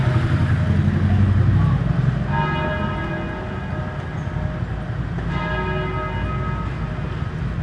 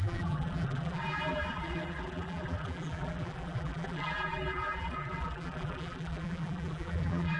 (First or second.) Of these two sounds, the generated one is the second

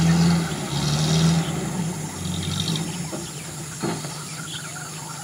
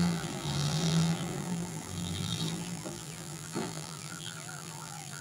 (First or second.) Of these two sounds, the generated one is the second